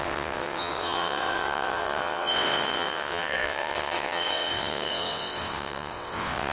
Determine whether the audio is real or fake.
fake